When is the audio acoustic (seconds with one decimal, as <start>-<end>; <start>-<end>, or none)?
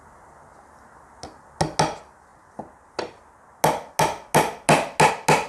0.0-5.5